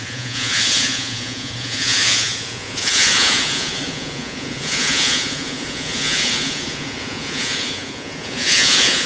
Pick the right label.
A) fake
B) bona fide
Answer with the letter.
A